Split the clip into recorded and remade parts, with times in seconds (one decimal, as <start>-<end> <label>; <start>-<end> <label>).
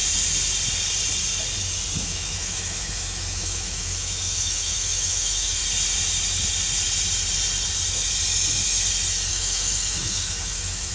0.0-2.0 recorded; 2.0-5.6 remade; 5.6-9.3 recorded; 9.3-10.9 remade